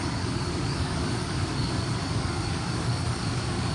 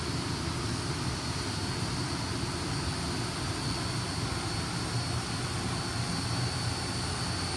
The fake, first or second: first